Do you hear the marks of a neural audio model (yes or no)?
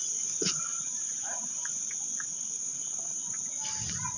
no